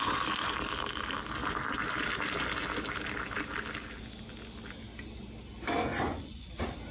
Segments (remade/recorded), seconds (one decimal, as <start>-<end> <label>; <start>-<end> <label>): 0.0-5.9 recorded; 5.9-6.5 remade; 6.5-6.9 recorded